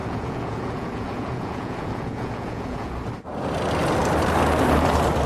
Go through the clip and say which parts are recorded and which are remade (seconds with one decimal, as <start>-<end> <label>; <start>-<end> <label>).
0.0-2.9 remade; 2.9-5.3 recorded